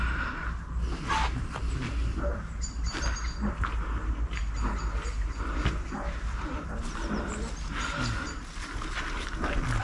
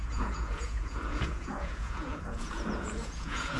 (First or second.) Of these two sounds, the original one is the first